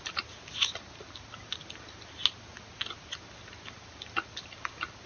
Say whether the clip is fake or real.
real